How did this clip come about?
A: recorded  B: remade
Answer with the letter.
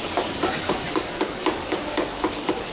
B